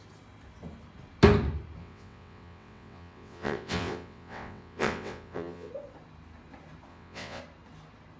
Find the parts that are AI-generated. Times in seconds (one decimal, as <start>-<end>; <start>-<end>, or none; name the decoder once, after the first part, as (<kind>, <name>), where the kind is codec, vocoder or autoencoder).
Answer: 1.8-5.7 (vocoder, WaveNeXt); 6.9-7.4